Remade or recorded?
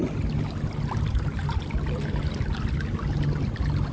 recorded